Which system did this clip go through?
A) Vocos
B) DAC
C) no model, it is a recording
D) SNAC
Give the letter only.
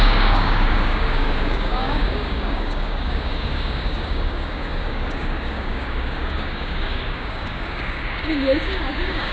B